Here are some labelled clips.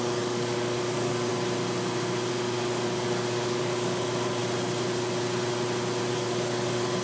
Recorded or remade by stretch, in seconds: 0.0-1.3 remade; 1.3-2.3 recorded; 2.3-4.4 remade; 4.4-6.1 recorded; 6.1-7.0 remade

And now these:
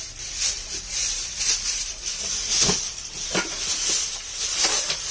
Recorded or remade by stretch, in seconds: 0.0-1.0 recorded; 1.0-4.1 remade; 4.1-5.1 recorded

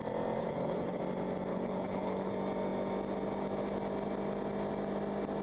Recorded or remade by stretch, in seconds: 0.0-0.4 recorded; 0.4-1.0 remade; 1.0-1.5 recorded; 1.5-2.3 remade; 2.3-5.4 recorded

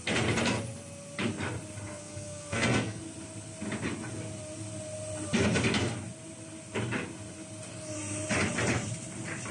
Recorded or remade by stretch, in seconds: 0.0-1.9 recorded; 1.9-3.0 remade; 3.0-9.5 recorded